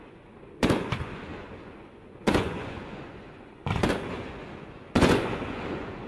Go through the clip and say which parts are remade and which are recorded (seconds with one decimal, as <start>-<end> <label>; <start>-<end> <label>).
0.0-6.1 remade